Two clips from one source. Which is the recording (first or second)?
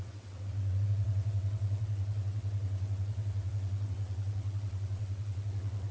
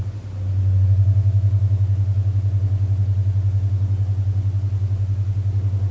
second